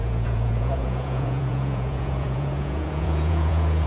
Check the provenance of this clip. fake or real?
fake